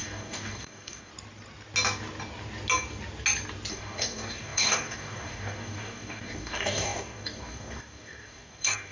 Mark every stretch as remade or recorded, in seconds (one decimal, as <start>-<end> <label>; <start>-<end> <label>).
0.0-1.1 remade; 1.1-3.7 recorded; 3.7-8.9 remade